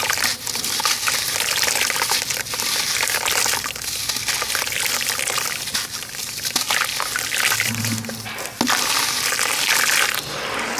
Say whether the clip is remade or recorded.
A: recorded